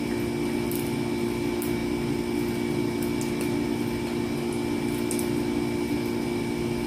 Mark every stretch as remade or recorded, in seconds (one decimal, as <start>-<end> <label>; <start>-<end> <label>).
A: 0.0-6.9 recorded